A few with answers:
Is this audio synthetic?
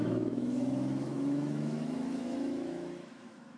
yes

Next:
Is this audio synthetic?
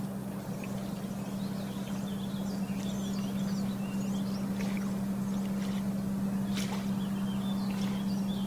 no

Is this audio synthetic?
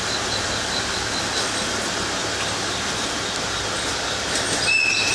no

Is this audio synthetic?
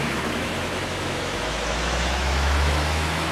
yes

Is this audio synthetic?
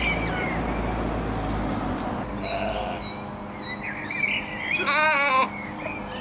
no